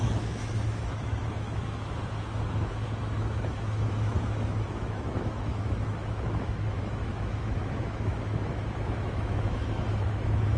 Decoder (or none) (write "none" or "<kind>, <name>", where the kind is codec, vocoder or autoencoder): autoencoder, DAC-VAE